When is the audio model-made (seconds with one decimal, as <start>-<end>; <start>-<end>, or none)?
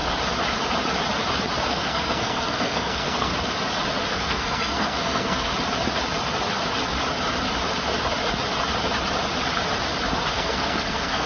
1.7-3.3; 4.1-5.5; 10.3-11.3